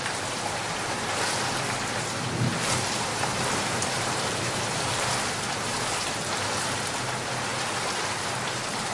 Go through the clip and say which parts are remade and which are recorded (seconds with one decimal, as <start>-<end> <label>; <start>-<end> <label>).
0.0-1.0 remade; 1.0-3.3 recorded; 3.3-5.0 remade; 5.0-8.9 recorded